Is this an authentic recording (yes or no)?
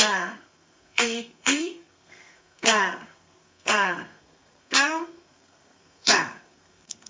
no